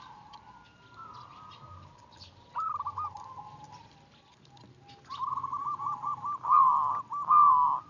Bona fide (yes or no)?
yes